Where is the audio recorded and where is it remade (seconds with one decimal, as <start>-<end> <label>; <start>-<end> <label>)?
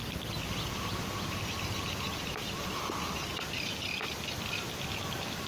0.0-3.3 recorded; 3.3-3.9 remade; 3.9-5.5 recorded